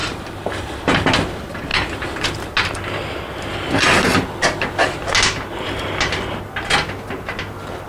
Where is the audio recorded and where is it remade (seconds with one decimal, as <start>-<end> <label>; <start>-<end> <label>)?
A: 0.0-0.8 remade; 0.8-7.9 recorded